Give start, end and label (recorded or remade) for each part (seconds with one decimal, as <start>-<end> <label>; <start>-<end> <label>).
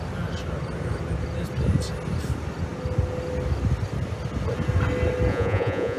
0.0-5.3 recorded; 5.3-6.0 remade